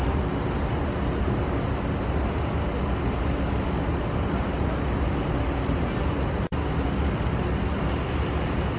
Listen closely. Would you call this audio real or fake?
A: real